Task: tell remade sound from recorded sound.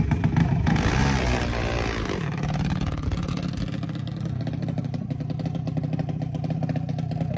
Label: recorded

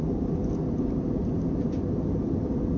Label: recorded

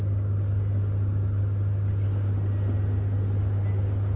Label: recorded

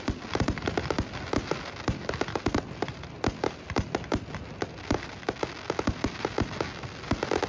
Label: recorded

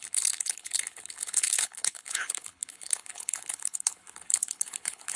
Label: remade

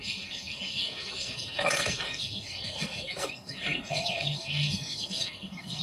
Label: remade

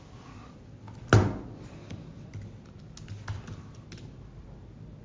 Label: recorded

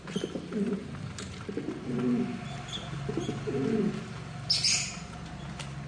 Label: recorded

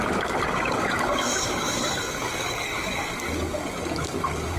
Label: remade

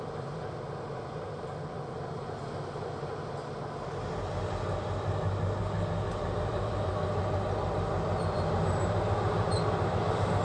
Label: recorded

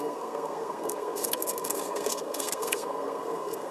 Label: remade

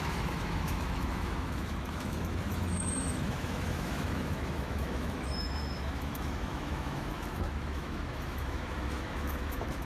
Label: remade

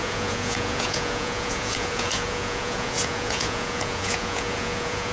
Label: remade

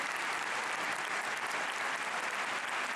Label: recorded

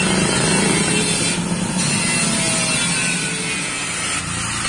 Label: recorded